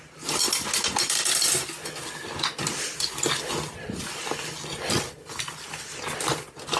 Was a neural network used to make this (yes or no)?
no